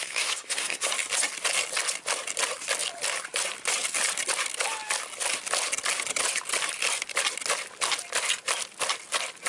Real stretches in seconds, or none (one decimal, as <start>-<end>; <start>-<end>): 0.9-9.5

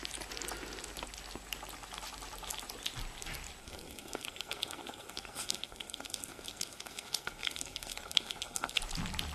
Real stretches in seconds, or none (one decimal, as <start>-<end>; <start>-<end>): 0.0-3.6; 8.8-9.3

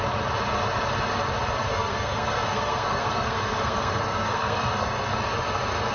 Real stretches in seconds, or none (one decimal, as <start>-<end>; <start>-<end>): 0.0-1.6; 5.1-5.9

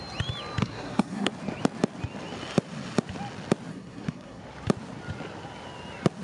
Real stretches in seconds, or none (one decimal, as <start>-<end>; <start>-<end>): 0.0-0.6; 1.3-3.7; 4.4-6.2

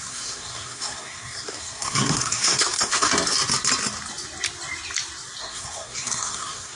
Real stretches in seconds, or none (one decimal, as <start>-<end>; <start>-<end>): 3.1-5.4

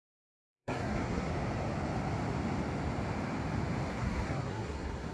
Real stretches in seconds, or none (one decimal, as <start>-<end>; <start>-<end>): 1.3-3.9

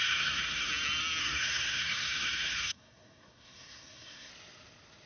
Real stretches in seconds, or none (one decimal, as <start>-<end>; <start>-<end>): 0.7-1.2; 4.3-5.1